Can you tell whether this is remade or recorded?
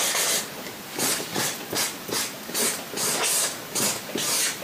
recorded